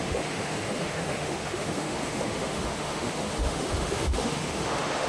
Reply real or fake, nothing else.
fake